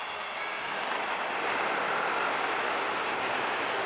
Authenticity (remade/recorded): recorded